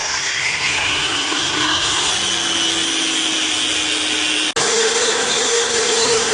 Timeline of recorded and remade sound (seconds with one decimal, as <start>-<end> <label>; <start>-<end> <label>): 0.0-2.1 remade; 2.1-4.6 recorded; 4.6-6.3 remade